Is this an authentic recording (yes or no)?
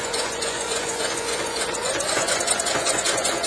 no